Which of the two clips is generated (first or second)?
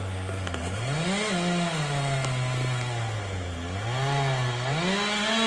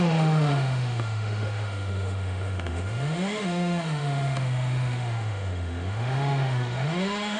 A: second